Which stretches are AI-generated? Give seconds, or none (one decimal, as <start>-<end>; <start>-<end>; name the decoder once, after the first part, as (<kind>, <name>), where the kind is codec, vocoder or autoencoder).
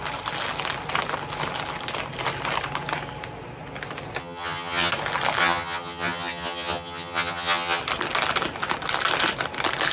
4.2-4.9 (vocoder, HiFi-GAN); 5.4-7.8